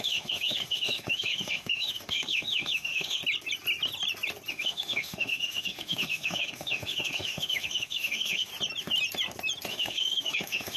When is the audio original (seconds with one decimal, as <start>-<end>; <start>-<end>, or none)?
3.2-4.5; 8.5-9.7